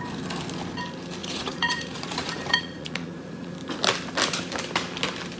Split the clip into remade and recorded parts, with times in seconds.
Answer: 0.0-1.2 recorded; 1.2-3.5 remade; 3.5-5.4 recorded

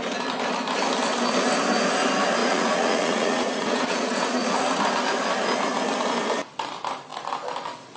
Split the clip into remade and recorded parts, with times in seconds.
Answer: 0.0-2.4 recorded; 2.4-4.8 remade; 4.8-8.0 recorded

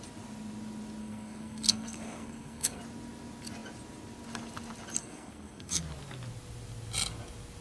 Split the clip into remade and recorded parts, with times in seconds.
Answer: 0.0-1.0 recorded; 1.0-2.8 remade; 2.8-5.0 recorded; 5.0-5.8 remade; 5.8-7.6 recorded

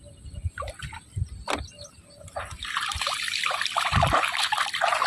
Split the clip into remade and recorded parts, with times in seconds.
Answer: 0.0-5.1 recorded

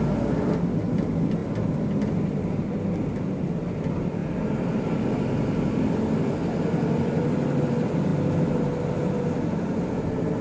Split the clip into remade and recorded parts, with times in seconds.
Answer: 0.0-10.4 recorded

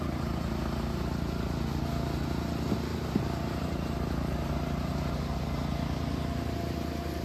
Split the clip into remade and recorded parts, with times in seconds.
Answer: 0.0-2.9 recorded; 2.9-5.1 remade; 5.1-7.2 recorded

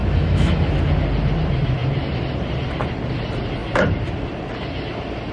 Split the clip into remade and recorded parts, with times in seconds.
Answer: 0.0-0.7 remade; 0.7-5.3 recorded